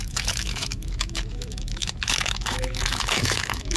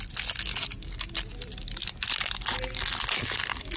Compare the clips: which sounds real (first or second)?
second